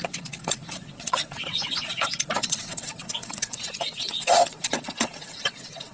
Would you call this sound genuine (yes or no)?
no